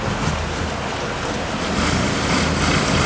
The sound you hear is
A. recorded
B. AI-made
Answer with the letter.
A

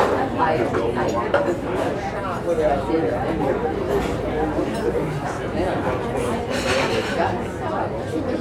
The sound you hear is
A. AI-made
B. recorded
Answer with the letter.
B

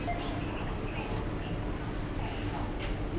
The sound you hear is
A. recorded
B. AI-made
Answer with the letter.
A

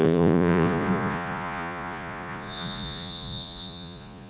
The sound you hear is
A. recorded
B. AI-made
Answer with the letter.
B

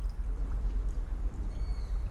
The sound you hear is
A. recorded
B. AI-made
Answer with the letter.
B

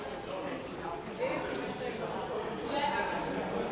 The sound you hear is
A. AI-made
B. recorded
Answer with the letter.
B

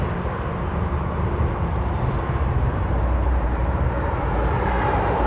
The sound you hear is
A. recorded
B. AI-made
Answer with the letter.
B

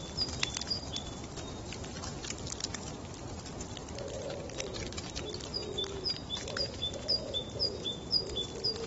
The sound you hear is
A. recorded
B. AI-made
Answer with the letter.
A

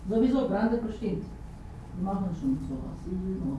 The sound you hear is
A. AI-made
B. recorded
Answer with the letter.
B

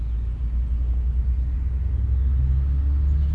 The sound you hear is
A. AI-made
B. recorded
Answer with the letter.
B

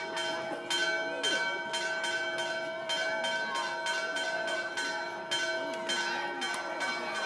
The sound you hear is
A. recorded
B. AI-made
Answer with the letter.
A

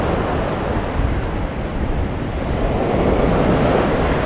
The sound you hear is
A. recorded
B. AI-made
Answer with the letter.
A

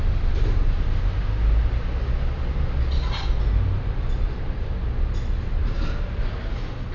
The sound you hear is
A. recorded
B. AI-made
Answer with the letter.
A